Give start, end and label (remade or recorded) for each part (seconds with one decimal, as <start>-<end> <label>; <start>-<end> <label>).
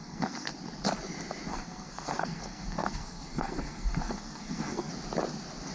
0.0-0.5 remade; 0.5-1.5 recorded; 1.5-4.9 remade; 4.9-5.7 recorded